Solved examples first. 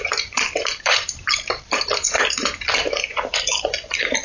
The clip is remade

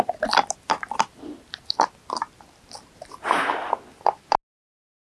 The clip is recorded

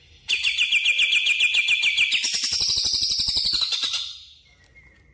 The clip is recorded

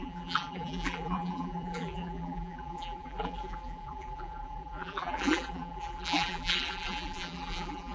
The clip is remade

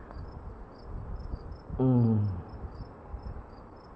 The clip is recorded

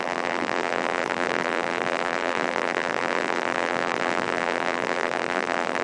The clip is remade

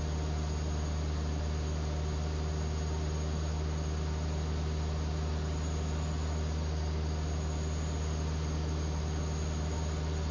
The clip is recorded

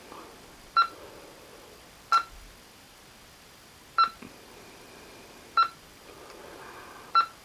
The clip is remade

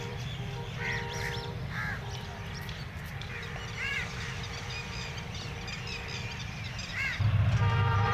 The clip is remade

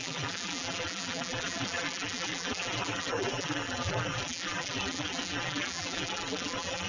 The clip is remade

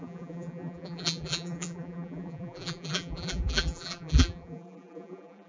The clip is remade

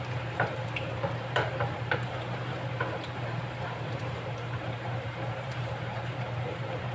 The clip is remade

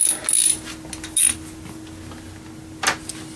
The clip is recorded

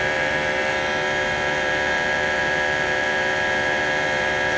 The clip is remade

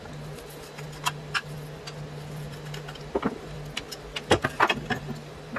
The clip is recorded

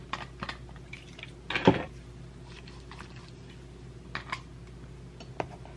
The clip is recorded